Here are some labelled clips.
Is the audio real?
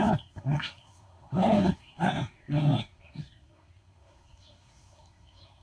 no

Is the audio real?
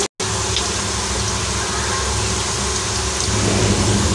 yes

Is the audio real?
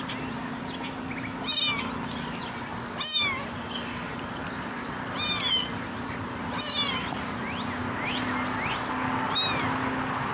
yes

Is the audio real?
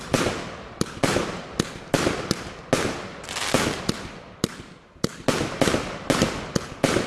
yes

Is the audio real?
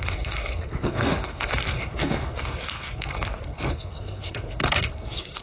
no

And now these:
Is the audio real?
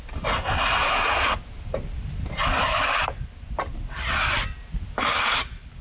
yes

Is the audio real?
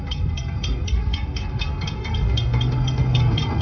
no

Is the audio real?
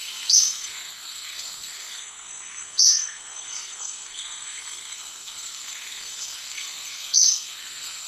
no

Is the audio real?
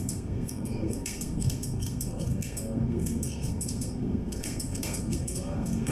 no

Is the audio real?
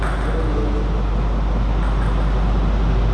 yes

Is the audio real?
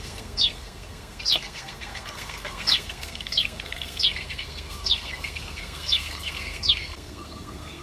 no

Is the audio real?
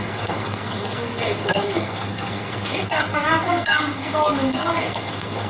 no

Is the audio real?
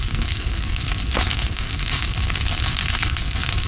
no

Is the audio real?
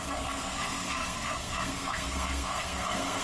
no